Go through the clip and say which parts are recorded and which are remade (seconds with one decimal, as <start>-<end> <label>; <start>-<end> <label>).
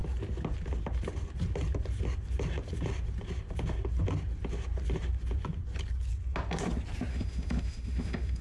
0.0-7.1 recorded; 7.1-8.4 remade